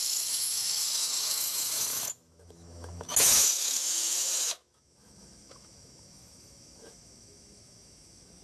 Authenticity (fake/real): fake